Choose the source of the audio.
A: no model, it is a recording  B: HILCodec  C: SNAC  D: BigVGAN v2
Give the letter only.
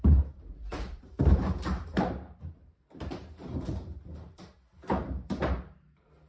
D